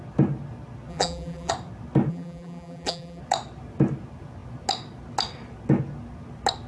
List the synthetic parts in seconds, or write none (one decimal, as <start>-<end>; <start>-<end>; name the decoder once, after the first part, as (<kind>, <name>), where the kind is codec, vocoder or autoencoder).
0.9-1.5 (vocoder, BigVGAN v2); 2.1-3.2

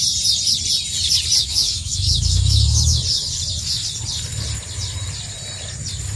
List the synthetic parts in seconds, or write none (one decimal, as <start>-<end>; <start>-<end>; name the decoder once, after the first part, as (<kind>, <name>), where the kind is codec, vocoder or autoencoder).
1.4-3.0 (autoencoder, DAC-VAE)